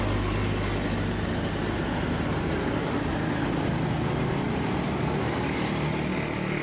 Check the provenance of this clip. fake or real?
real